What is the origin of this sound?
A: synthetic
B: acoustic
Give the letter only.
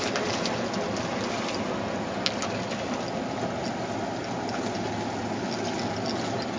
B